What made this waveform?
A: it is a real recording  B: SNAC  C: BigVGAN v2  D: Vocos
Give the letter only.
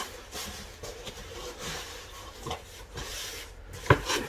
C